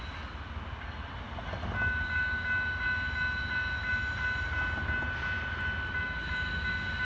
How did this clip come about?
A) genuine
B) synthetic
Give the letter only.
A